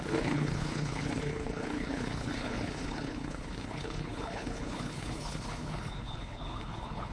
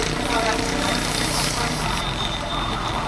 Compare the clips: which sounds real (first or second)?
second